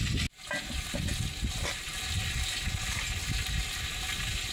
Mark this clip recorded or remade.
recorded